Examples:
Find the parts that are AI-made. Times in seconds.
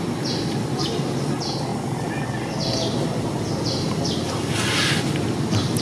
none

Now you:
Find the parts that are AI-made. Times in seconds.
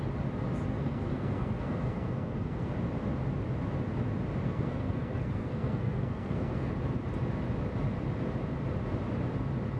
0.7-2.7 (codec, SNAC); 4.4-6.7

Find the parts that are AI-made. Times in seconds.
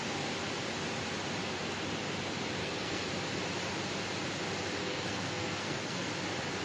2.6-3.1 (codec, SNAC); 4.8-6.1